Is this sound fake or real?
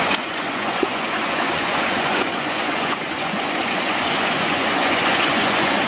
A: fake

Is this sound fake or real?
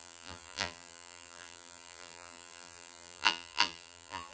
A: fake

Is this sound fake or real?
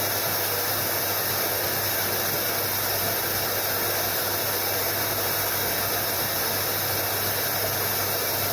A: real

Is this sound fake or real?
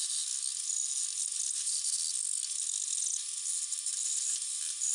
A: real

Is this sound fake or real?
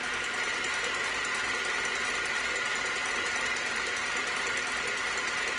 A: real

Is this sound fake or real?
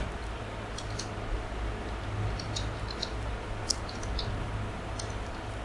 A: real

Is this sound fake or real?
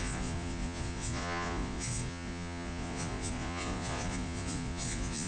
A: fake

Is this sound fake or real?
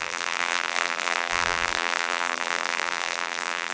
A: fake